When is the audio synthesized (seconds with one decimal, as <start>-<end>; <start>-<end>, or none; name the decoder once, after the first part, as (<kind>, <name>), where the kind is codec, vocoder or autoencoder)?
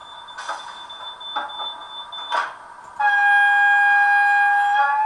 none